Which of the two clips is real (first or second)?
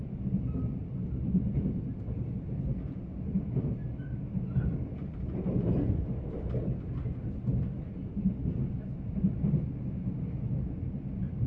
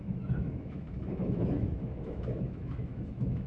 first